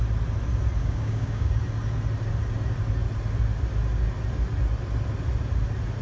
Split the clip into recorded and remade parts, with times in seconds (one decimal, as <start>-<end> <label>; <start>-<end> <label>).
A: 0.0-0.8 recorded; 0.8-1.5 remade; 1.5-6.0 recorded